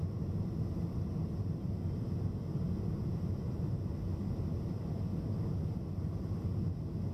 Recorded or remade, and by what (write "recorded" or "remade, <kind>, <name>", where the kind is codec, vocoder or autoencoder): recorded